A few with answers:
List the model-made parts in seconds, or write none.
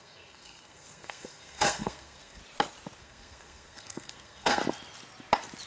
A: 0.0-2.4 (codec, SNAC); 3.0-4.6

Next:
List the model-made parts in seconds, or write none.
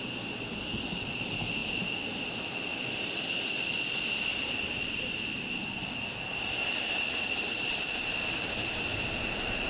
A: none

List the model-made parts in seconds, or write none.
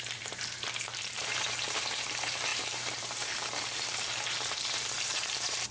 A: 0.0-5.7 (vocoder, BigVGAN v2)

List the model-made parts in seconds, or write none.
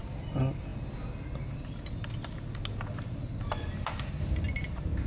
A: none